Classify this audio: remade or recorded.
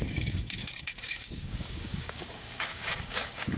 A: remade